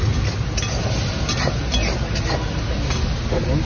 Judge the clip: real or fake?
real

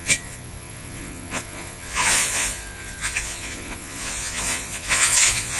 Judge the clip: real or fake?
fake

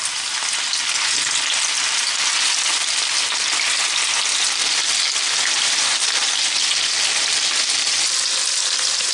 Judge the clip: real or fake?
real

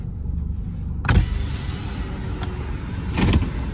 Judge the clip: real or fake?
real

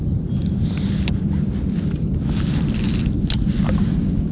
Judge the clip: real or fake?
real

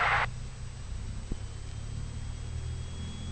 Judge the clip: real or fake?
real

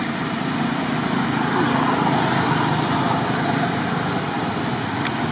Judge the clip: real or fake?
real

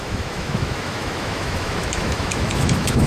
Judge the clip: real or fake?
fake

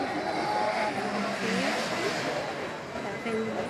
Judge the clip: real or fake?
real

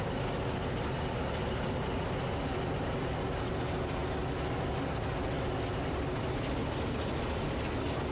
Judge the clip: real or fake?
real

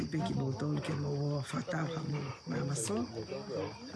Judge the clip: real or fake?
real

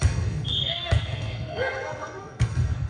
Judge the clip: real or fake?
fake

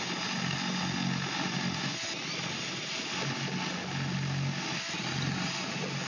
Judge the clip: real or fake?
real